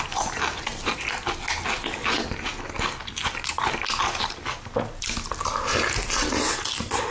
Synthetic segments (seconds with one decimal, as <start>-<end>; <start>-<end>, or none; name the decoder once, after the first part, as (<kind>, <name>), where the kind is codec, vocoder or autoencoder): none